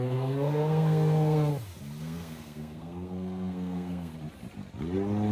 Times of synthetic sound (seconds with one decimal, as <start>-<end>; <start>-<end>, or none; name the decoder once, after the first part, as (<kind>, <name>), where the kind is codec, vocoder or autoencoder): 0.0-1.5 (codec, SNAC); 2.0-4.1